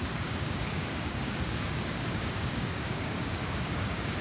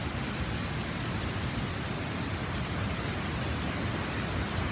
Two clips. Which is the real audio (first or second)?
second